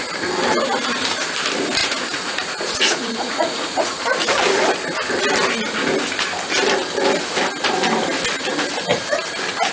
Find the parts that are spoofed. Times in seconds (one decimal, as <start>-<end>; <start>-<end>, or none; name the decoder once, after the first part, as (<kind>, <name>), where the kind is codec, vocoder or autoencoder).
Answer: 1.8-4.0 (vocoder, Vocos)